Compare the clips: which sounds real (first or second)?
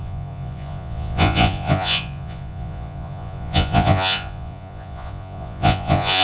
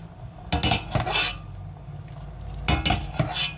second